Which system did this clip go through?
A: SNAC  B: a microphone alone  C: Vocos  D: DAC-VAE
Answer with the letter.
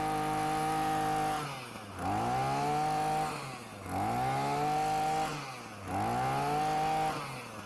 B